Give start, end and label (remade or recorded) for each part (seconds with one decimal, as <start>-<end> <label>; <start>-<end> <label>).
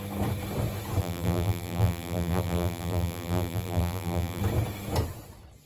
0.0-1.0 recorded; 1.0-4.4 remade; 4.4-5.7 recorded